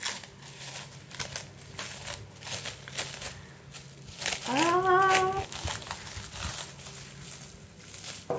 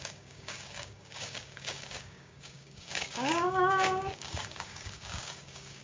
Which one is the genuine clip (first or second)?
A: first